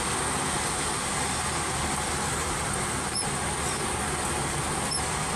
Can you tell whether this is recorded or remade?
recorded